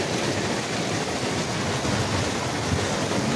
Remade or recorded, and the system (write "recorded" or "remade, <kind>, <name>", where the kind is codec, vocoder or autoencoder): recorded